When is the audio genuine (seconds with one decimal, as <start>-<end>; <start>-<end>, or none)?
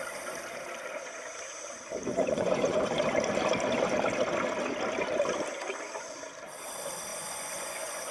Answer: 0.0-2.1; 2.8-7.1